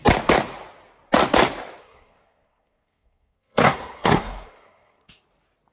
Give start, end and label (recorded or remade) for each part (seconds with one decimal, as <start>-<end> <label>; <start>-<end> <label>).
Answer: 0.0-1.8 recorded; 1.8-5.2 remade; 5.2-5.7 recorded